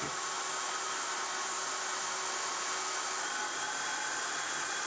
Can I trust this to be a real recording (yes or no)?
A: yes